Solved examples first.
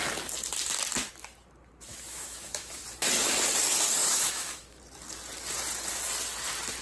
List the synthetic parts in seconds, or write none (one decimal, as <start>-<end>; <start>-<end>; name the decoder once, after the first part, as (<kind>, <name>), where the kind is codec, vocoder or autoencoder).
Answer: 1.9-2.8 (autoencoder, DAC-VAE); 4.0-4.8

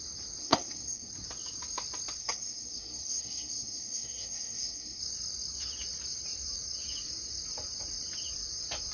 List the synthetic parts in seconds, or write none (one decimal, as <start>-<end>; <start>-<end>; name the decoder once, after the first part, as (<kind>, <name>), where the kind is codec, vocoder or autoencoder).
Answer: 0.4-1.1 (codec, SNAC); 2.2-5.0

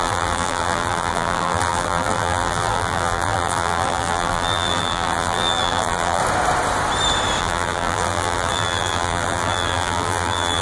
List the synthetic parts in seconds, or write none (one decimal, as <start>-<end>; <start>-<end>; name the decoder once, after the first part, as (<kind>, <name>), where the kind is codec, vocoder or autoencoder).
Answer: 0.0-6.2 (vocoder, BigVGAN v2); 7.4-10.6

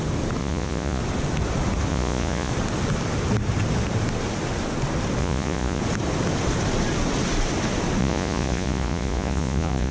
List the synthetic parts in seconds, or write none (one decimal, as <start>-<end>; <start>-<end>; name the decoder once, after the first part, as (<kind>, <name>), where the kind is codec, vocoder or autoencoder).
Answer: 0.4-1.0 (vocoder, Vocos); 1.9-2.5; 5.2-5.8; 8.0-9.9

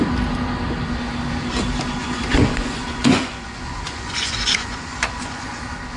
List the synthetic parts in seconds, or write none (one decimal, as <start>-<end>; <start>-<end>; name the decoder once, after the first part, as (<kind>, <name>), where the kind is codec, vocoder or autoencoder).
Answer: 2.0-5.6 (vocoder, Vocos)

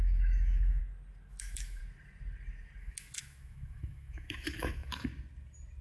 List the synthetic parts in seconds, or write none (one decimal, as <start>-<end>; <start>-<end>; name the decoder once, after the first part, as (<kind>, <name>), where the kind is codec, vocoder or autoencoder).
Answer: 0.0-0.8 (autoencoder, DAC-VAE); 1.3-1.8; 2.8-5.1